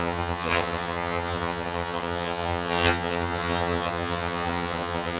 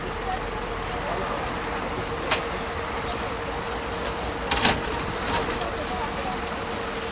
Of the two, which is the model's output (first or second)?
first